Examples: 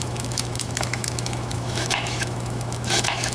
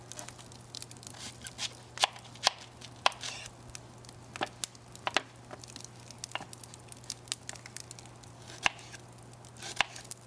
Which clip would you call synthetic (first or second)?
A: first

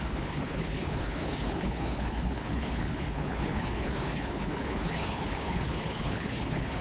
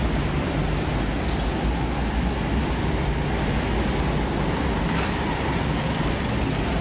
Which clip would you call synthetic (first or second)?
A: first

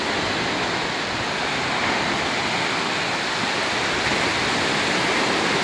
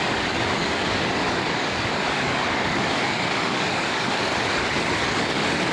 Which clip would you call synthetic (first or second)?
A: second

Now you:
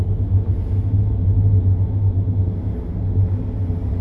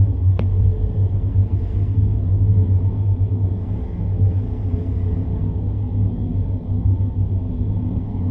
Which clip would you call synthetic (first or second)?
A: second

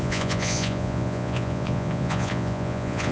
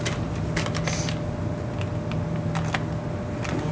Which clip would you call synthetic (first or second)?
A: first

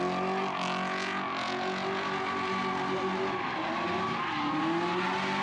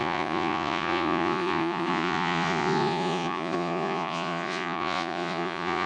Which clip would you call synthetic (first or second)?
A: second